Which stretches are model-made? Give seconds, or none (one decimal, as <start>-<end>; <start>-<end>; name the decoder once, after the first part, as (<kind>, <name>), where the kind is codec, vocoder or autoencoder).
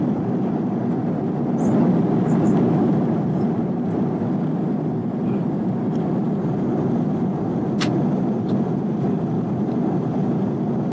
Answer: 0.0-1.0 (vocoder, BigVGAN v2); 4.2-5.0; 7.8-10.9